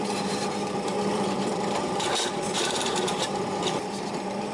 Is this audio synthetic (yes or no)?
yes